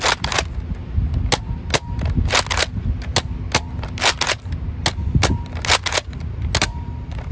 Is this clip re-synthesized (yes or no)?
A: no